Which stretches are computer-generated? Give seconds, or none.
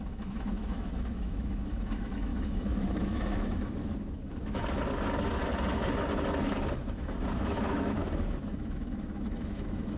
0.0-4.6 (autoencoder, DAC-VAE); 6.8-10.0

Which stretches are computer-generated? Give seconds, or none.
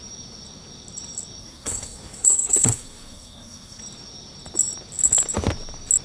1.4-3.8 (codec, SNAC)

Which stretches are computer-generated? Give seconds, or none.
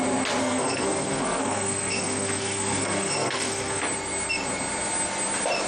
0.4-3.8 (codec, SNAC)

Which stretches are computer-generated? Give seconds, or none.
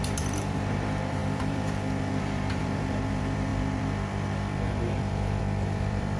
0.0-6.2 (vocoder, BigVGAN v2)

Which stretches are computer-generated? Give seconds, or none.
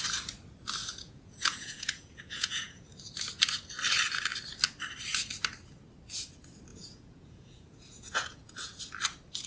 0.8-2.9 (vocoder, Vocos); 6.7-8.8